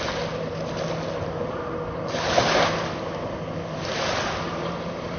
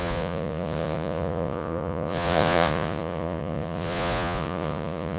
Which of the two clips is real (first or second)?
first